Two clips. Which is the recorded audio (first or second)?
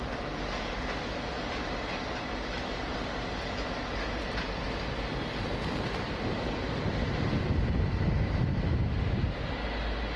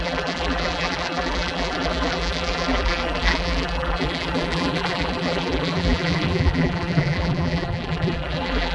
first